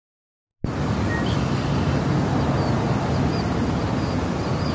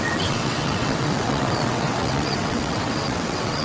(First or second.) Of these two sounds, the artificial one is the second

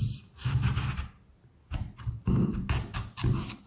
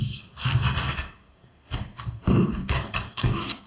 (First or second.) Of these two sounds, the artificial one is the second